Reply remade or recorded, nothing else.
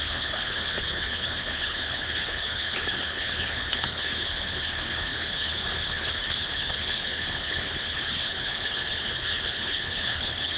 remade